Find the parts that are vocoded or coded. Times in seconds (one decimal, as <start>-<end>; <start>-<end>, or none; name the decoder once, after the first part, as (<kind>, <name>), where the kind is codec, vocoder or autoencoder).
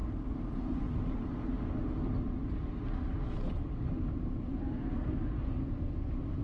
none